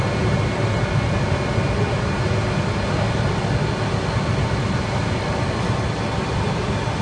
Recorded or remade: recorded